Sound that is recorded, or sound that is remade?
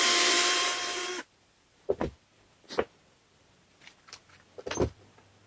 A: remade